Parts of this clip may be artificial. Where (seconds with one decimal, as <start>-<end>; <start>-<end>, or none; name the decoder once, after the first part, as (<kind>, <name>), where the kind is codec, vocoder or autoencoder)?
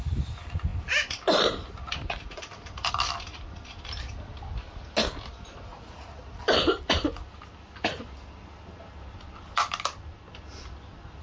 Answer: 5.7-6.4 (vocoder, Vocos)